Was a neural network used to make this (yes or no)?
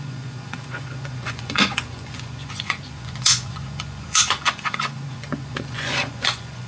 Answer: yes